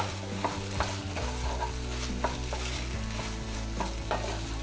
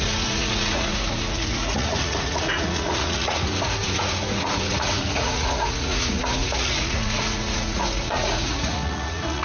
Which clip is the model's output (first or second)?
second